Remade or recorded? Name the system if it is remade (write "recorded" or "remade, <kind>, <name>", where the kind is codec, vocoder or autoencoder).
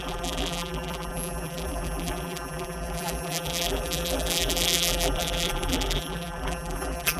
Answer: remade, vocoder, BigVGAN v2